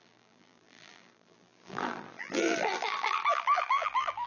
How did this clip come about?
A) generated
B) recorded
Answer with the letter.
A